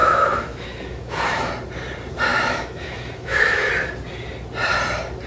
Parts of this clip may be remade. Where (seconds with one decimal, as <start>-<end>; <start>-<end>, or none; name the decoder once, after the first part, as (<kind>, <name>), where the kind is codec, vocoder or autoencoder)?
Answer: 0.0-1.5 (autoencoder, DAC-VAE); 2.3-3.7